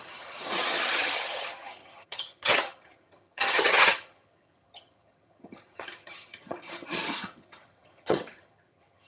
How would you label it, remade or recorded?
remade